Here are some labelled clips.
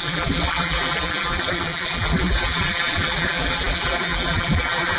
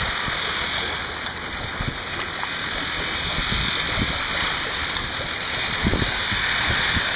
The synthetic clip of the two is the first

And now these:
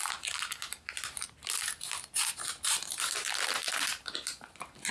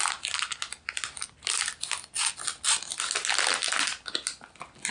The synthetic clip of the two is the first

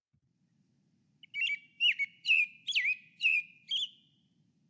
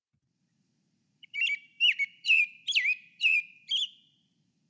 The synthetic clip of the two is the second